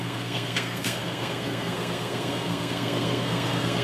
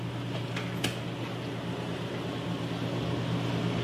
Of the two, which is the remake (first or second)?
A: first